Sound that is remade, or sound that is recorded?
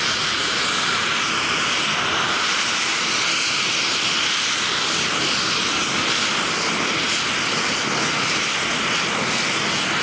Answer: recorded